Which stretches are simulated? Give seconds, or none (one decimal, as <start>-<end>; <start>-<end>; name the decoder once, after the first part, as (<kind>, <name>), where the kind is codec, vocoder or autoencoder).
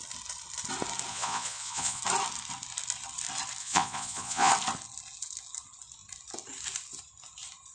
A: 1.1-2.0 (vocoder, Vocos); 3.6-4.5